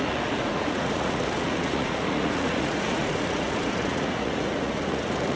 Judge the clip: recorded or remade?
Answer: remade